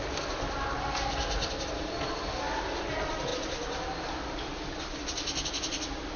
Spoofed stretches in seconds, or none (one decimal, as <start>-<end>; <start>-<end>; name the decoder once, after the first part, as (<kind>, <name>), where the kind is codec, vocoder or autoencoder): none